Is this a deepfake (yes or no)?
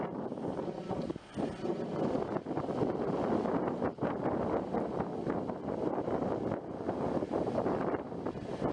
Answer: no